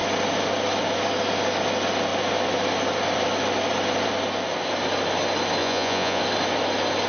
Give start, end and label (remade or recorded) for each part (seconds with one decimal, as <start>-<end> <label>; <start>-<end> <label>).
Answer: 0.0-5.6 recorded; 5.6-6.2 remade; 6.2-7.1 recorded